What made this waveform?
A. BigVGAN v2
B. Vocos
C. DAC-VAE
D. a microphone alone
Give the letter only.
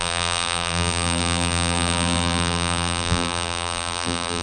A